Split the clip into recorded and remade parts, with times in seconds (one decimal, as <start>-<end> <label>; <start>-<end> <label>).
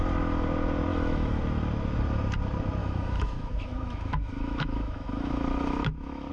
0.0-0.9 recorded; 0.9-1.4 remade; 1.4-2.8 recorded; 2.8-6.3 remade